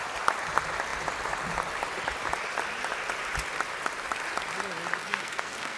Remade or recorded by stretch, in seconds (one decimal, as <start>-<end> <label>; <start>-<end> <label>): 0.0-5.0 recorded; 5.0-5.8 remade